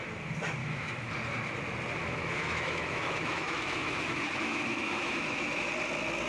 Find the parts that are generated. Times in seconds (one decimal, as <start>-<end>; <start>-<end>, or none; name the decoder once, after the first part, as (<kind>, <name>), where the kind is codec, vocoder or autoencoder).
0.6-1.1 (autoencoder, DAC-VAE); 2.0-5.7